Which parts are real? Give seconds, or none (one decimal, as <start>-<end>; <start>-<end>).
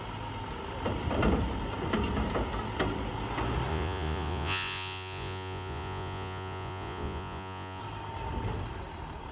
0.0-3.7; 7.8-9.3